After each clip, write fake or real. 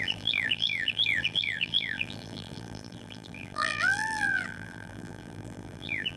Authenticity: fake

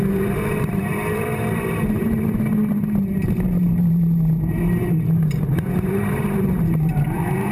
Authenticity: fake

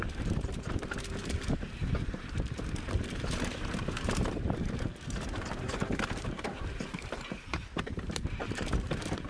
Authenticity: fake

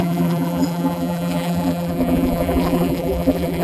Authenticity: fake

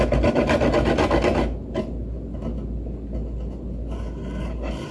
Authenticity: real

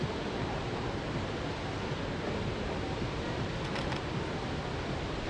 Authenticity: real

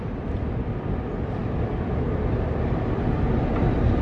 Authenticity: fake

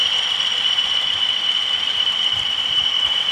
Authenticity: fake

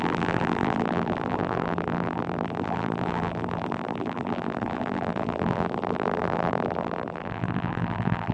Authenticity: fake